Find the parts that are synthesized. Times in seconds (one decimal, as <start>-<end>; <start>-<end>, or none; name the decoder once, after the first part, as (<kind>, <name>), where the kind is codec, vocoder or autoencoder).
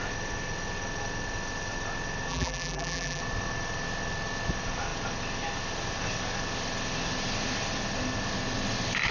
2.3-3.2 (vocoder, BigVGAN v2)